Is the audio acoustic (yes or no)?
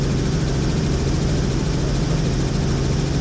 yes